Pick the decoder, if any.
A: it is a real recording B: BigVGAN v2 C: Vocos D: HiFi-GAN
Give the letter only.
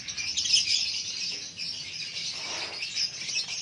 A